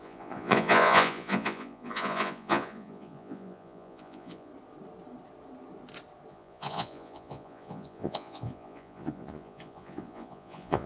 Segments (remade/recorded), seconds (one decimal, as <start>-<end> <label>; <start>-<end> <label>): 0.0-4.5 remade; 4.5-6.3 recorded; 6.3-10.9 remade